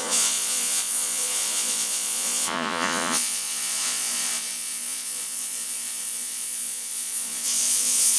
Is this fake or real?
fake